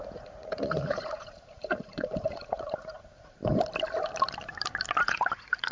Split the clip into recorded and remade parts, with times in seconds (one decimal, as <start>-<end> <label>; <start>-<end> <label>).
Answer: 0.0-3.4 remade; 3.4-5.0 recorded; 5.0-5.7 remade